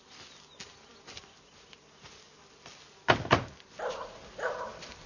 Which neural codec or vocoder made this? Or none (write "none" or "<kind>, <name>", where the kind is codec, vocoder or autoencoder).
none